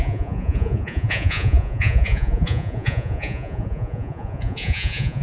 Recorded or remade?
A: remade